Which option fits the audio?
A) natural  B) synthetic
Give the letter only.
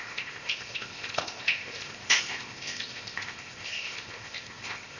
B